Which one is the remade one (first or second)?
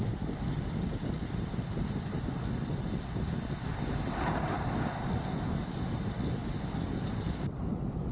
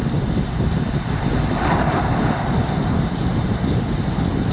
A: second